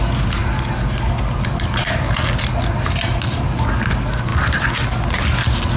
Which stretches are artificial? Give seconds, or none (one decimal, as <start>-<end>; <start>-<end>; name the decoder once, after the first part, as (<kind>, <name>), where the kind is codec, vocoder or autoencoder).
none